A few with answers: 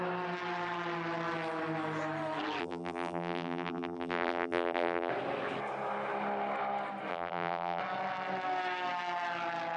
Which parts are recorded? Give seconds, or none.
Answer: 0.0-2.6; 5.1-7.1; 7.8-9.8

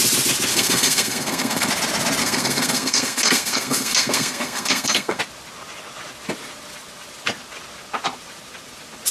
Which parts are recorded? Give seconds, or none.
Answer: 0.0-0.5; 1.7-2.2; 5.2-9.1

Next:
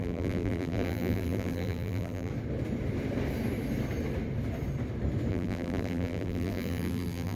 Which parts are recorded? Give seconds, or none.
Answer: 2.3-5.3